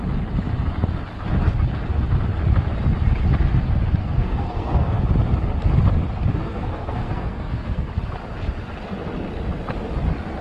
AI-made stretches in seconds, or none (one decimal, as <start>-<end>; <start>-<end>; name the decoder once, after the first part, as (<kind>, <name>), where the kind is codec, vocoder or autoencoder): 4.0-5.0 (codec, SNAC); 6.3-7.9